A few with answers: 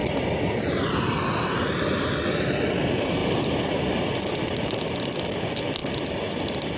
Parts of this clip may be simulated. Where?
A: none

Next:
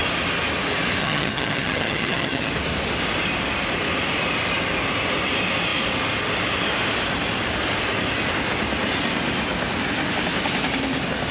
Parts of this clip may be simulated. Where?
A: 1.0-2.5 (vocoder, HiFi-GAN)

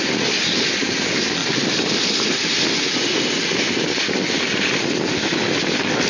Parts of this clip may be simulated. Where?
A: none